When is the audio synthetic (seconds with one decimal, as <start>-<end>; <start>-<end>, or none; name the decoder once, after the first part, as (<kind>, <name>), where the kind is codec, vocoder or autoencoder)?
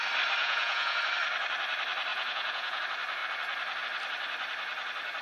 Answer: 0.4-1.0 (vocoder, Vocos); 2.1-2.8